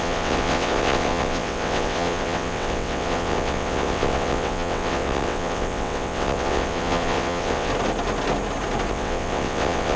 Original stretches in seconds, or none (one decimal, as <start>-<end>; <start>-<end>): 7.7-8.9

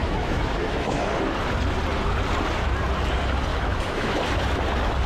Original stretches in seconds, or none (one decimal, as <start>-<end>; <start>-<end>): 1.0-3.5; 4.2-5.1

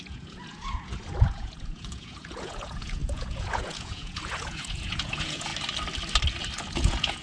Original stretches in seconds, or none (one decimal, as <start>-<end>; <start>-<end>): 5.5-6.6

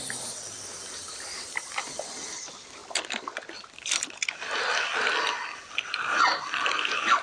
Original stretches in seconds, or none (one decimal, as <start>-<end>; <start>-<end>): 0.0-7.2

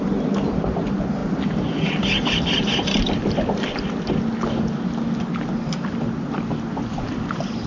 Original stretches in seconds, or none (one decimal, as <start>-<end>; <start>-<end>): 0.0-7.7

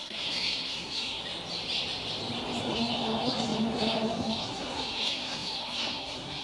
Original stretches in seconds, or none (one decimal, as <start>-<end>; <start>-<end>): 1.2-2.6